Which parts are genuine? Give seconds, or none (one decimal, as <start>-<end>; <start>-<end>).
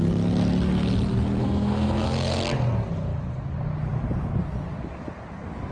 0.0-1.4; 2.4-5.7